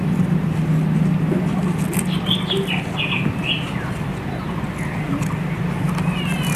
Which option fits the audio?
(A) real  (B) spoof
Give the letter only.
A